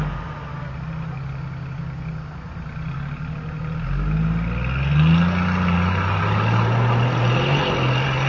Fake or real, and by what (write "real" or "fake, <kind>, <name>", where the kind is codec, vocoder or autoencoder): real